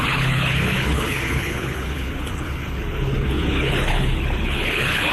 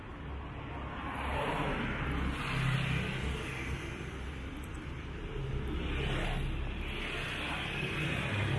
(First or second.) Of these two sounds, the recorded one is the second